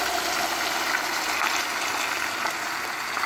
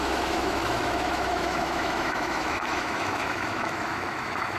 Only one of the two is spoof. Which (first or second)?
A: second